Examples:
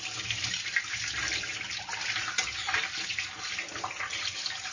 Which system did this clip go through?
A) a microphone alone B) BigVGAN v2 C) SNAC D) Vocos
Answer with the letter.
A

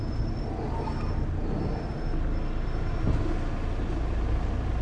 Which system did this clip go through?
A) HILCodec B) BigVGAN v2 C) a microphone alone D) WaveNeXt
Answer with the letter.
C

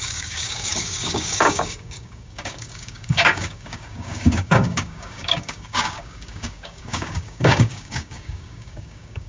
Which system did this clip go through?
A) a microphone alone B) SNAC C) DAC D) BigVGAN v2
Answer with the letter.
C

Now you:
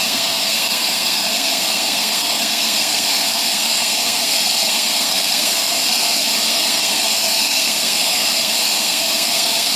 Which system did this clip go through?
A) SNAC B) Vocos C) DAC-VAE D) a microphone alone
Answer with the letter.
A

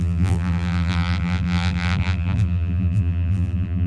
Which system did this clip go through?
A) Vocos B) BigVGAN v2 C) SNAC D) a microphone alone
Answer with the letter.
B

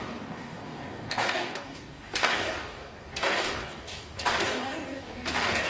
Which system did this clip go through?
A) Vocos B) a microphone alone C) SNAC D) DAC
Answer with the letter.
D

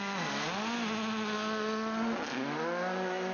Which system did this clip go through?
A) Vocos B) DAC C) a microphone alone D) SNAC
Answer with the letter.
C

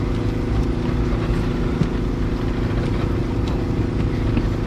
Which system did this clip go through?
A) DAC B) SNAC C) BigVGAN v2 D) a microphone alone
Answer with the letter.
D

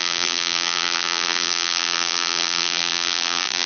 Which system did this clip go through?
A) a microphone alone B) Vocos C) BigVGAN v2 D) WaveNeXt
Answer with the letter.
C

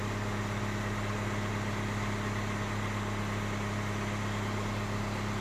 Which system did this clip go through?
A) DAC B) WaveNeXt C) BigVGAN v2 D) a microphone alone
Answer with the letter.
D